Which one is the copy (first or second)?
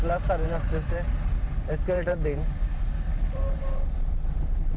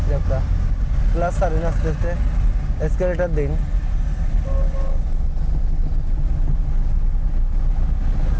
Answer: first